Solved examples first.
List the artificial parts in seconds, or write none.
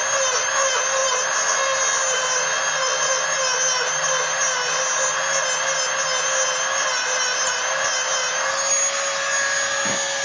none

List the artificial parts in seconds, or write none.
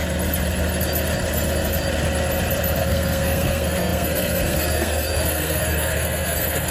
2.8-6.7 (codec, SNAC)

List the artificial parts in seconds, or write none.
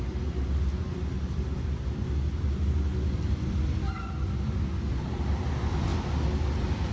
none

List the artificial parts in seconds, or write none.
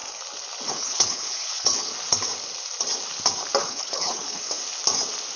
0.7-1.9 (codec, HILCodec); 3.6-4.6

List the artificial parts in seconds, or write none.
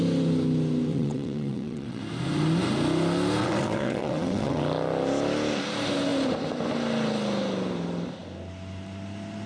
0.9-2.0 (vocoder, WaveNeXt); 3.4-4.6